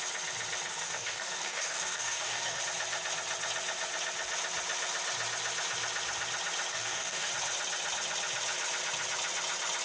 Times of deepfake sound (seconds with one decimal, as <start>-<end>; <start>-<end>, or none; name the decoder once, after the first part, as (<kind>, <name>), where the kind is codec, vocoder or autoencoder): 0.7-2.6 (codec, DAC); 6.7-7.3